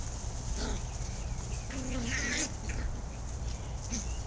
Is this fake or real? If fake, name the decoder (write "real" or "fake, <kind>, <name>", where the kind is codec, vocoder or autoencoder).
real